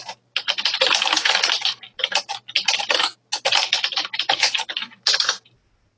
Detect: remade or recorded recorded